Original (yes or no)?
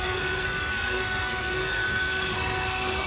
no